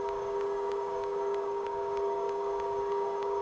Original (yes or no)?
no